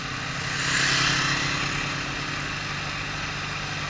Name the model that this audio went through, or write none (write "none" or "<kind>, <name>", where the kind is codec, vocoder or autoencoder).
none